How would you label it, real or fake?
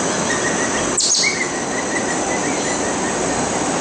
real